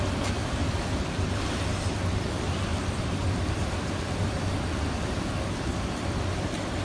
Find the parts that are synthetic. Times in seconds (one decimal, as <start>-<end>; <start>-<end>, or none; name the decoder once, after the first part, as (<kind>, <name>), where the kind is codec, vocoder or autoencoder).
2.7-4.3 (vocoder, BigVGAN v2)